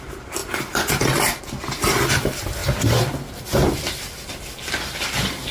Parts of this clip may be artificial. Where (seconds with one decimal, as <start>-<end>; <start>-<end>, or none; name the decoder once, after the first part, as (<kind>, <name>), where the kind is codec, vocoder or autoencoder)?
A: 0.0-5.5 (vocoder, BigVGAN v2)